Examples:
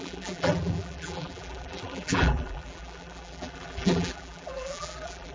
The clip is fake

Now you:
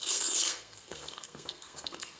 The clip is fake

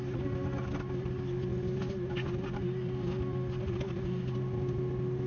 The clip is real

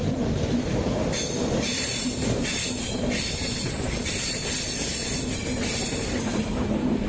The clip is real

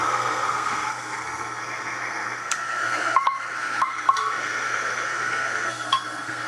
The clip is fake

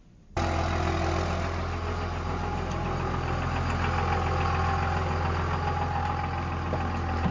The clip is real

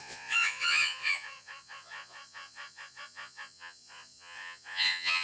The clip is fake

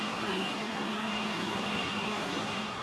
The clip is fake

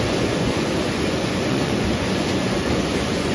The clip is fake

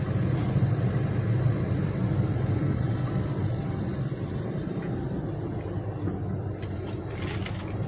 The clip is real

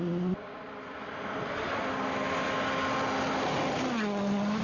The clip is real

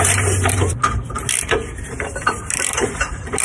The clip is fake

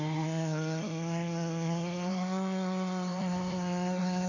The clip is fake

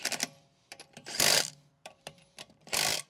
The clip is fake